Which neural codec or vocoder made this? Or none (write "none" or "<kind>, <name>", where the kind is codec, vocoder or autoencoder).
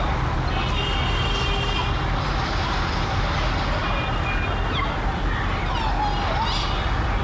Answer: none